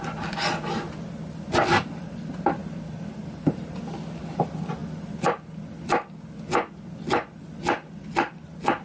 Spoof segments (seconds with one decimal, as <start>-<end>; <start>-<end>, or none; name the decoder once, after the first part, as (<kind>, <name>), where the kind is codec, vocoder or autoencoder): none